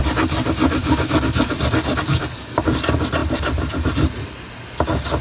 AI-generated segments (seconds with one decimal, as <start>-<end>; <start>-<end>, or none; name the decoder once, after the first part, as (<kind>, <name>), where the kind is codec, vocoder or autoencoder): 0.8-1.5 (codec, DAC); 2.1-2.6